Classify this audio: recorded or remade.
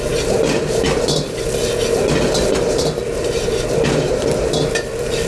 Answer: recorded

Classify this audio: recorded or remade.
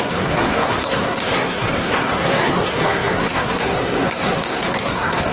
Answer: remade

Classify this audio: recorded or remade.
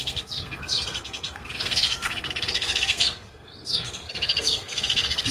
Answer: remade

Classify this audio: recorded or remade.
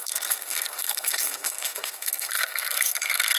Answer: remade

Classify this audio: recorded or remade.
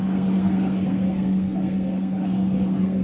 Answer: remade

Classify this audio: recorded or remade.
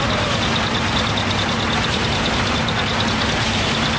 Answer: recorded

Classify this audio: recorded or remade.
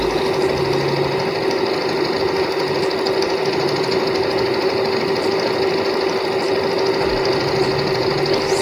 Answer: recorded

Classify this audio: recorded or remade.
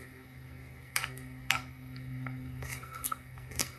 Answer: remade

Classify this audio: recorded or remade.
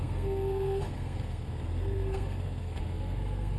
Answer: remade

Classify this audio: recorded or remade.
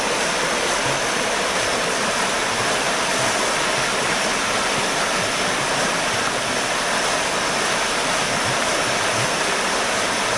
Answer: recorded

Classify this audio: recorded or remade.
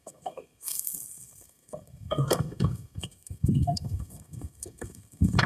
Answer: remade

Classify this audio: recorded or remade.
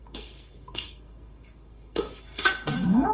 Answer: remade